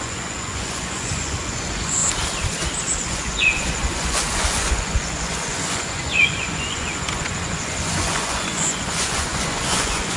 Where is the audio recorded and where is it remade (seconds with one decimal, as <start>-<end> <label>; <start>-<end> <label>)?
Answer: 0.0-2.0 remade; 2.0-3.0 recorded; 3.0-10.2 remade